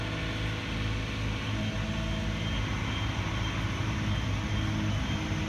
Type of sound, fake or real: real